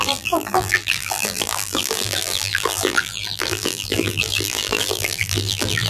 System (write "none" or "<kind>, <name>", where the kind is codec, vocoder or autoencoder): vocoder, BigVGAN v2